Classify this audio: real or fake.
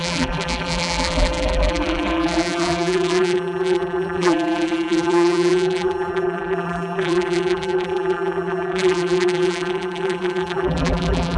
fake